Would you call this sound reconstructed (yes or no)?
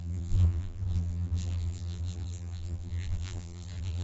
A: yes